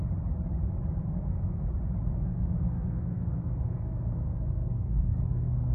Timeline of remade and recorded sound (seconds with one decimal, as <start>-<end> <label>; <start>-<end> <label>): 0.0-1.0 recorded; 1.0-1.6 remade; 1.6-2.1 recorded; 2.1-5.7 remade